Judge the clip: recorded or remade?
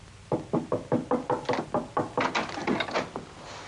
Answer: recorded